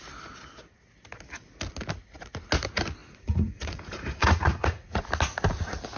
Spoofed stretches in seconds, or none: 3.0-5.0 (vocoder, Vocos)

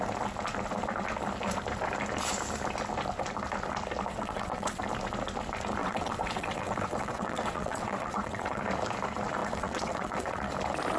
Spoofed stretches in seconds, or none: 4.1-4.8 (vocoder, WaveNeXt); 5.8-8.6; 9.4-10.5

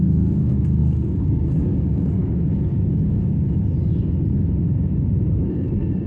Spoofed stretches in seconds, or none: 0.0-2.2 (codec, SNAC); 5.5-6.1

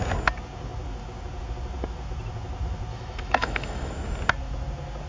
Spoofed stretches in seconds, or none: 2.9-3.9 (autoencoder, DAC-VAE)

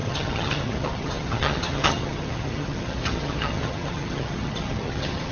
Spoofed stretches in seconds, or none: 0.0-5.3 (vocoder, HiFi-GAN)

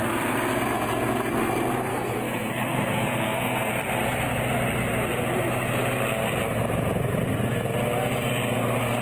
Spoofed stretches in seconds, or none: 1.9-3.7 (codec, SNAC)